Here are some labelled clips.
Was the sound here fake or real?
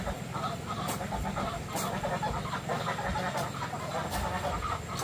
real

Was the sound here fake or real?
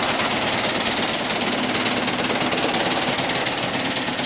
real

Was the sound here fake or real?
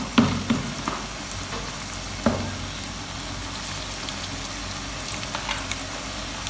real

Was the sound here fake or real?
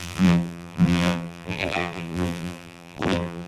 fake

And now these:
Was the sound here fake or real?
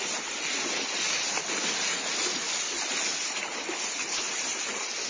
real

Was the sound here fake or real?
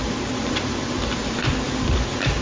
real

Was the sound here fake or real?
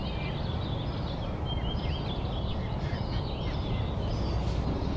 real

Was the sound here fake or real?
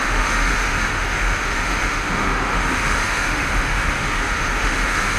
fake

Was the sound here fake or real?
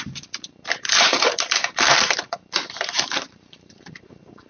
fake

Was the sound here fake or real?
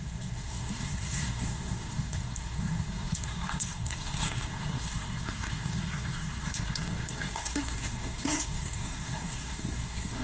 fake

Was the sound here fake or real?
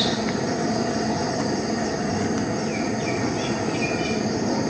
real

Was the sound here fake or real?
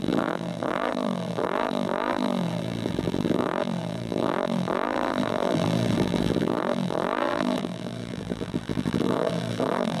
fake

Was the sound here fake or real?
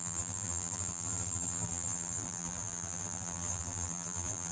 fake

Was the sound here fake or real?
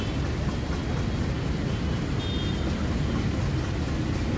real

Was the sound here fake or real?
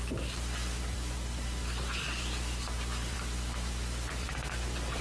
real